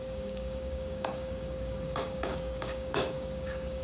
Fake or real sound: fake